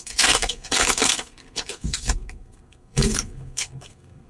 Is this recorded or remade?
remade